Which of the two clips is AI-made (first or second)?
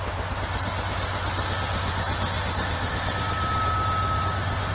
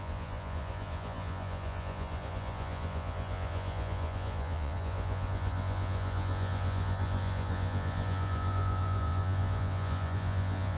second